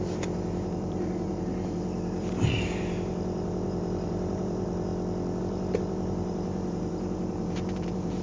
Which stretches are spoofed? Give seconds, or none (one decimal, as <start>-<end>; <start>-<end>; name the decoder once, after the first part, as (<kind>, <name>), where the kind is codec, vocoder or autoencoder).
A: 0.0-4.9 (vocoder, BigVGAN v2); 5.4-8.2